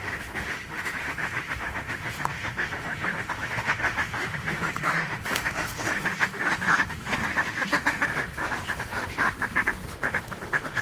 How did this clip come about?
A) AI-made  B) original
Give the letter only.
A